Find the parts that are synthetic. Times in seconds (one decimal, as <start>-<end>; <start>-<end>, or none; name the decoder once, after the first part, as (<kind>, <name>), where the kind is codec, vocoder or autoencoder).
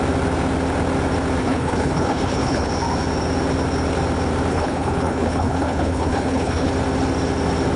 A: 1.4-2.7 (codec, HILCodec); 4.5-6.7